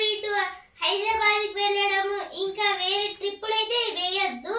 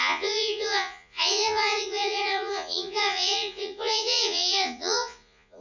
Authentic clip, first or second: first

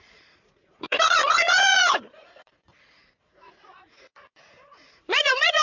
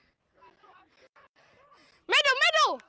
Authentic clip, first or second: second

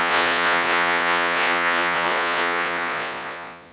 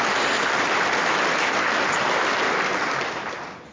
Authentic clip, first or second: second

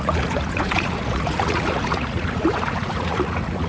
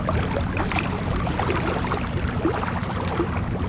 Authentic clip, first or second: second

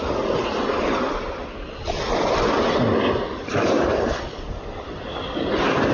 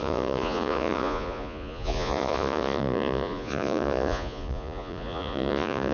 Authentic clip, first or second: first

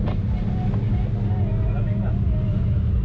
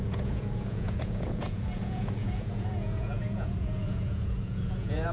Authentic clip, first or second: first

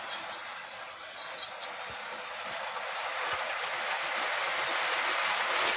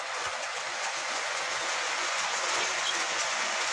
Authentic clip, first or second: first